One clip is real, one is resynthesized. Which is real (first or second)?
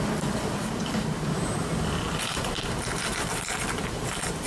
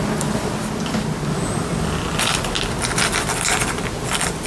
second